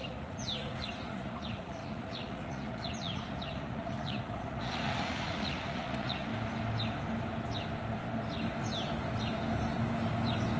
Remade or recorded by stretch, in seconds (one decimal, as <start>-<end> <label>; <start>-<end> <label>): 0.0-6.3 remade; 6.3-10.6 recorded